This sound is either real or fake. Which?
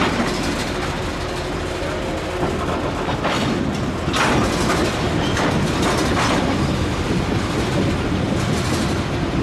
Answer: real